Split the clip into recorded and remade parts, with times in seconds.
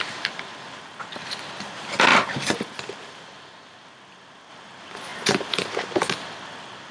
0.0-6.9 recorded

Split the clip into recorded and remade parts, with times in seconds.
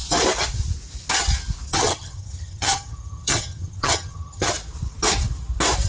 0.0-1.7 recorded; 1.7-4.5 remade; 4.5-5.9 recorded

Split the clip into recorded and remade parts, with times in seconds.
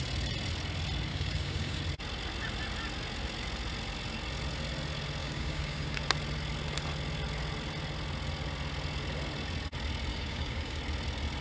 0.0-1.1 recorded; 1.1-1.8 remade; 1.8-5.2 recorded; 5.2-6.0 remade; 6.0-10.1 recorded; 10.1-10.8 remade; 10.8-11.4 recorded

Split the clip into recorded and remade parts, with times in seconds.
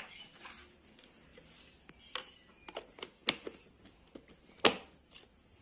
0.0-5.6 recorded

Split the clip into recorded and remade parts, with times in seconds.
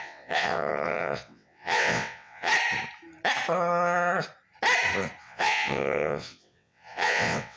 0.0-2.5 remade; 2.5-5.2 recorded; 5.2-7.6 remade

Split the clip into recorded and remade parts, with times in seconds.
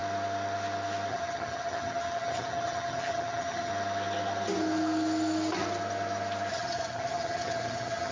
0.0-1.1 recorded; 1.1-3.7 remade; 3.7-6.5 recorded; 6.5-8.1 remade